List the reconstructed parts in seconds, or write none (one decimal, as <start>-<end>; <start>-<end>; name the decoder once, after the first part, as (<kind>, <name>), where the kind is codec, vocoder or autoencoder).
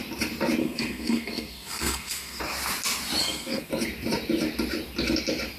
0.6-2.4 (codec, SNAC); 3.2-3.7